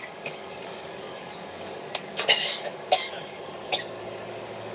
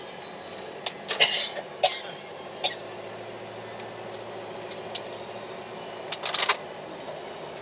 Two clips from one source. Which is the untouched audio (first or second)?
second